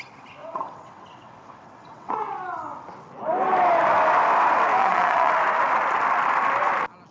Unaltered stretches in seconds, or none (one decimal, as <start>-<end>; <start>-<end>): 0.0-0.4; 2.1-4.8; 5.3-7.1